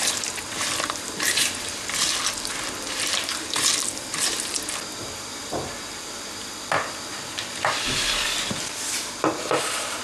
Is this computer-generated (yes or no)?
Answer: yes